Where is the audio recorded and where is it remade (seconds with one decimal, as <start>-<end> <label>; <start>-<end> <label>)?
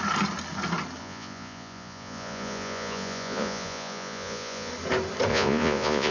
0.0-1.0 recorded; 1.0-4.7 remade; 4.7-5.3 recorded; 5.3-6.1 remade